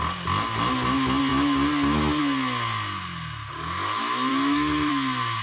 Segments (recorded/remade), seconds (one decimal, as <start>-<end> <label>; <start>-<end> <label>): 0.0-4.3 recorded; 4.3-4.9 remade; 4.9-5.4 recorded

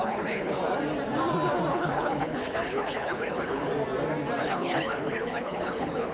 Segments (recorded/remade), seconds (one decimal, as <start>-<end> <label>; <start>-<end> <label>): 0.0-0.6 remade; 0.6-1.7 recorded; 1.7-3.7 remade; 3.7-4.4 recorded; 4.4-6.1 remade

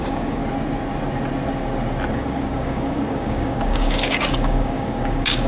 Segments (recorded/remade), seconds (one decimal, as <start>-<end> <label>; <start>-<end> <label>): 0.0-0.4 remade; 0.4-2.1 recorded; 2.1-5.5 remade

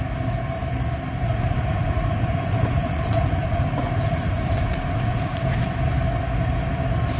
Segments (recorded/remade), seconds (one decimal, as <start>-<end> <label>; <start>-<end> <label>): 0.0-1.3 recorded; 1.3-5.6 remade; 5.6-7.2 recorded